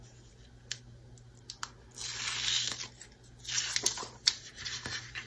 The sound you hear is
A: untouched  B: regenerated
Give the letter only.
A